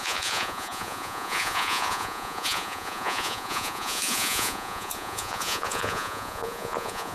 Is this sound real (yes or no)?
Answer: no